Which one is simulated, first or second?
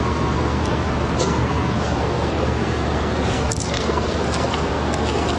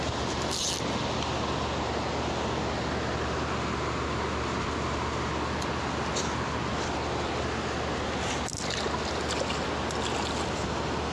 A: first